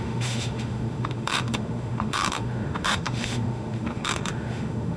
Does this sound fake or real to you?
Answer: fake